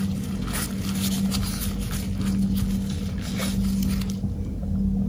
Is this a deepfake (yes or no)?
no